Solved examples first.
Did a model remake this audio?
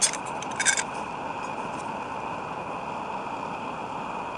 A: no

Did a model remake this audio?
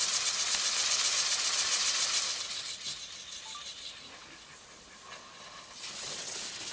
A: no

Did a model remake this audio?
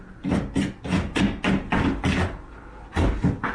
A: no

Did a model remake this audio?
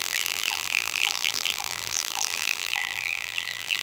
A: yes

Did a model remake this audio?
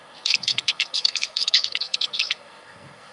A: yes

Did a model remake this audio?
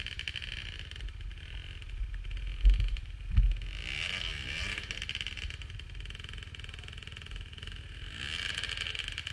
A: no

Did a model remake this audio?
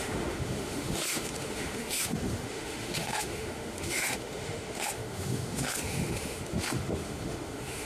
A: yes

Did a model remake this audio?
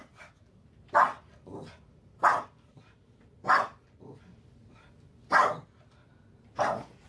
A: no